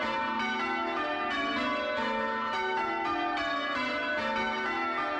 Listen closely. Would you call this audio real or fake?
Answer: real